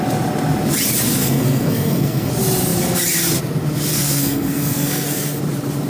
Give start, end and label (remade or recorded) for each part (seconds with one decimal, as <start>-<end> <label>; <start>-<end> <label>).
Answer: 0.0-1.2 recorded; 1.2-2.3 remade; 2.3-3.9 recorded; 3.9-5.4 remade; 5.4-5.9 recorded